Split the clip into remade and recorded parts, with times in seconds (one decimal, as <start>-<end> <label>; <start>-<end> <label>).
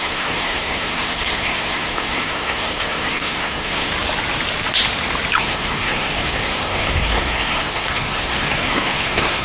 0.0-3.9 remade; 3.9-5.4 recorded; 5.4-9.4 remade